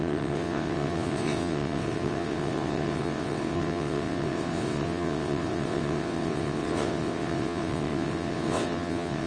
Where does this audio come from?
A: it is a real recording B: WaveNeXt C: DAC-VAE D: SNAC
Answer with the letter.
B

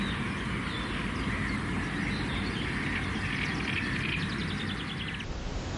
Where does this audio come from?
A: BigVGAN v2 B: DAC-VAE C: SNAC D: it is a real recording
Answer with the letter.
D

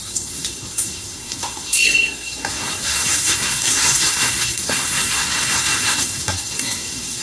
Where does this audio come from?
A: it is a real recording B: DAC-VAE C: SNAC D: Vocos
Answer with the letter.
C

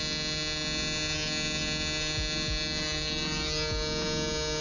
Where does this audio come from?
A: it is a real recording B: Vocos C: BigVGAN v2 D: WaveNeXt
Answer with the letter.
A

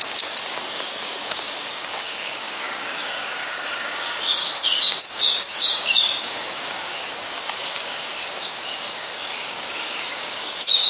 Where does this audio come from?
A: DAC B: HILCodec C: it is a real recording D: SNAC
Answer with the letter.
A